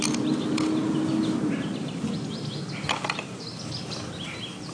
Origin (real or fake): real